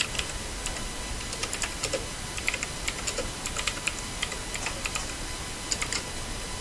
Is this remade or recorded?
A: recorded